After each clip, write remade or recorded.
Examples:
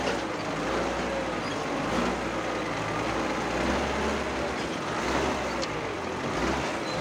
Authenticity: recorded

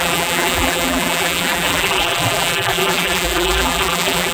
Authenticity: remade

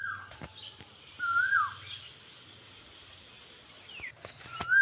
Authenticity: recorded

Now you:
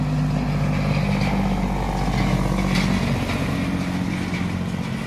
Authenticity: recorded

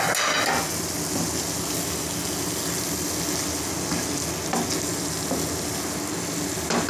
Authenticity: recorded